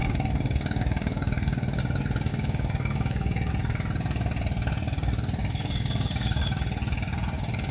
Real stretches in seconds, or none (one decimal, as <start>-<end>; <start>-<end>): 1.8-2.3; 3.5-5.4; 6.6-7.7